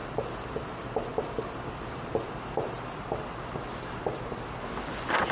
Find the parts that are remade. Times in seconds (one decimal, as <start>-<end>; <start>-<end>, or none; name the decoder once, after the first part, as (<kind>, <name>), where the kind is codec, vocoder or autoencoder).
none

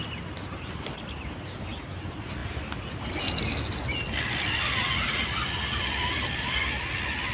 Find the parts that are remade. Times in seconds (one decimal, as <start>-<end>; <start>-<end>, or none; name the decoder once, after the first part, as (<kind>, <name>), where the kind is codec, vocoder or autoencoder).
none

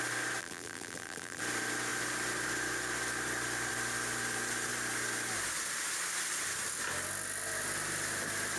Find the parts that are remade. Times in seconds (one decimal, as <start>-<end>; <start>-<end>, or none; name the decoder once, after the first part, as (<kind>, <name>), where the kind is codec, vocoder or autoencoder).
0.4-1.4 (vocoder, BigVGAN v2)

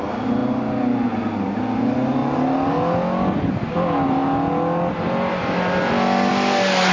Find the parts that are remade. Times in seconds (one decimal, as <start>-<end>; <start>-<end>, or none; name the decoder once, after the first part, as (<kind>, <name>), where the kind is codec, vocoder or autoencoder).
none

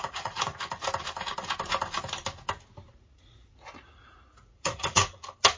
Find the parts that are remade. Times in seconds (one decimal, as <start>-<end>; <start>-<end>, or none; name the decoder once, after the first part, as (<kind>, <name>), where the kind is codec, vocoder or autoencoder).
0.0-0.5 (vocoder, Vocos); 2.9-5.0

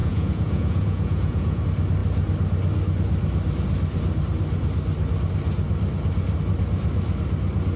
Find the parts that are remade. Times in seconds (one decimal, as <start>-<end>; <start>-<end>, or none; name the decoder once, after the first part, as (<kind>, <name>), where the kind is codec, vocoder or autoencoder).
0.0-1.6 (vocoder, Vocos)

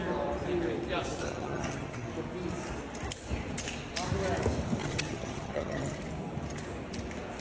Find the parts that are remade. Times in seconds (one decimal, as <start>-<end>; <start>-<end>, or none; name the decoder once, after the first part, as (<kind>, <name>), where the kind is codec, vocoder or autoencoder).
1.2-2.1 (vocoder, HiFi-GAN); 4.8-6.0